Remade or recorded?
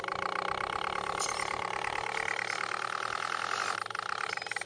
recorded